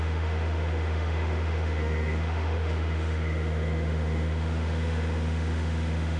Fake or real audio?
fake